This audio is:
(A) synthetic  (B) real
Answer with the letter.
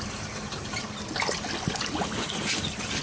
B